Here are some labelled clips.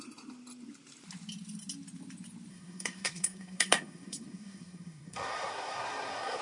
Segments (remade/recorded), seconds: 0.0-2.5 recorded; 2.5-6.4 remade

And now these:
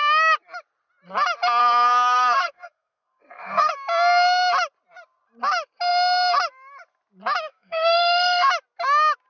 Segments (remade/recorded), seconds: 0.0-1.6 recorded; 1.6-3.7 remade; 3.7-7.5 recorded; 7.5-8.5 remade; 8.5-9.3 recorded

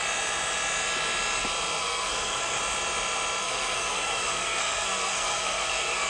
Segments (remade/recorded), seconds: 0.0-1.8 recorded; 1.8-2.6 remade; 2.6-3.4 recorded; 3.4-6.1 remade